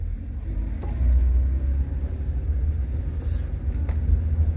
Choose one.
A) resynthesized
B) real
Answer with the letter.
B